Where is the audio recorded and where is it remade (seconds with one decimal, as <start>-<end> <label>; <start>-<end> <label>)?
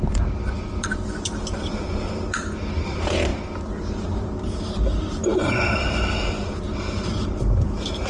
0.0-3.3 remade; 3.3-3.9 recorded; 3.9-8.1 remade